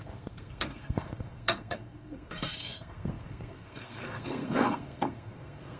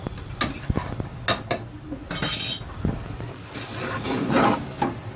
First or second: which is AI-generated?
first